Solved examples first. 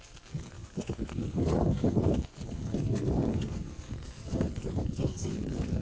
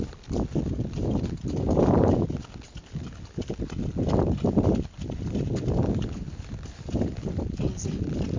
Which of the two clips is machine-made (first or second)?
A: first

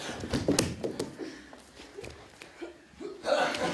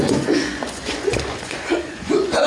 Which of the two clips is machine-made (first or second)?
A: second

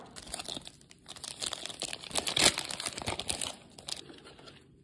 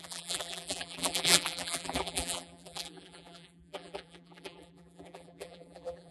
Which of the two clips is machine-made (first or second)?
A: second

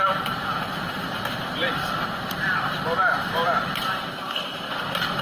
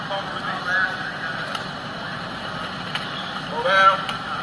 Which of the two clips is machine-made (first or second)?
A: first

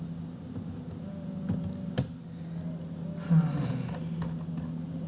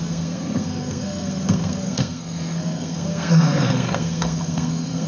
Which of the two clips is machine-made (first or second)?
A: second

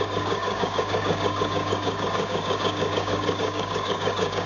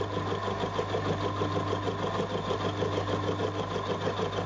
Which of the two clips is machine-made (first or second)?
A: first